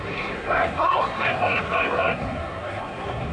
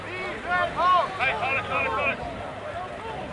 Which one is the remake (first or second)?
first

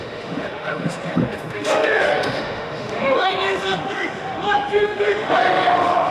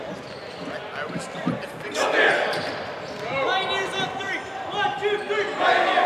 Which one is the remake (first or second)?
first